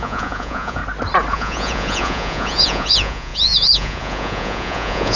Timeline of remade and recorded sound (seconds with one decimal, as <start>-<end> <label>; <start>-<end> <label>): 0.0-0.8 remade; 0.8-1.3 recorded; 1.3-5.2 remade